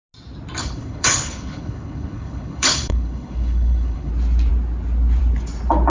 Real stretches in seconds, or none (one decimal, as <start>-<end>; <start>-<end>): 0.0-0.6; 4.1-5.9